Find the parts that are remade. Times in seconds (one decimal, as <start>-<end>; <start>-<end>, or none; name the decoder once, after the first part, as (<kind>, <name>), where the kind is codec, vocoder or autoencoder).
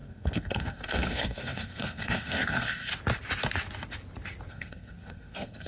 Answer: 0.0-2.9 (codec, SNAC); 4.5-5.7